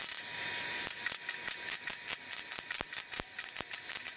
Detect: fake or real real